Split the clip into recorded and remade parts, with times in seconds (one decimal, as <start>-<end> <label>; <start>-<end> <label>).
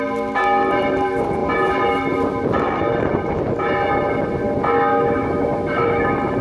0.0-4.9 recorded; 4.9-6.0 remade; 6.0-6.4 recorded